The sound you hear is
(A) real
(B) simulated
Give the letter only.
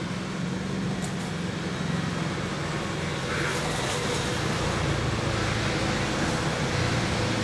A